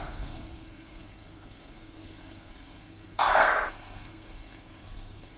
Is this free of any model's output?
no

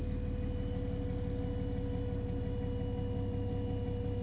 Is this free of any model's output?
yes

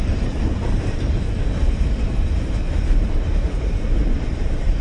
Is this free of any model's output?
no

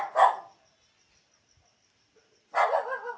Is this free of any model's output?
yes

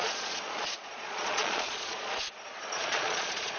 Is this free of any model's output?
no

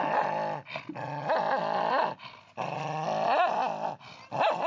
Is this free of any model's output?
yes